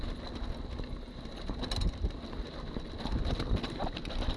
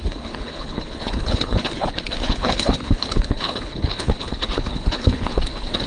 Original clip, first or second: first